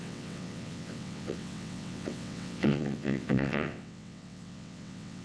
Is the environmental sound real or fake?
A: fake